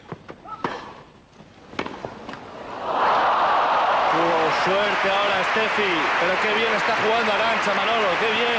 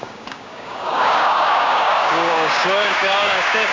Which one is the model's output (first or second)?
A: second